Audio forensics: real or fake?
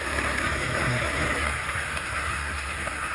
fake